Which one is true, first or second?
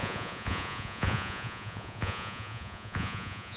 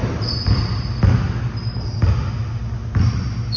second